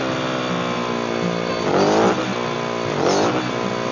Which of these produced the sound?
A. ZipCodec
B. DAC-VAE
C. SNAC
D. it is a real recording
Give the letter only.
D